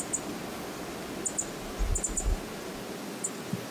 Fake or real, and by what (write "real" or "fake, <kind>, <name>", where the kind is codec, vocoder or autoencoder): real